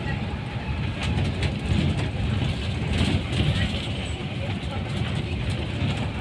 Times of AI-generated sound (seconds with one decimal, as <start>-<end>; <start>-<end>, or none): 0.0-1.0; 2.3-4.2; 5.2-6.2